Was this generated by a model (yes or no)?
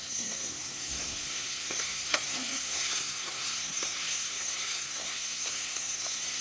yes